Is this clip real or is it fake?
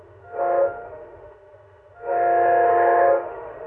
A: fake